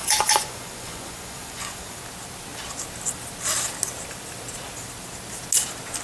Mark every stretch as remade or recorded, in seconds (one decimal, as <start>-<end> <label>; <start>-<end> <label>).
0.0-2.0 remade; 2.0-6.0 recorded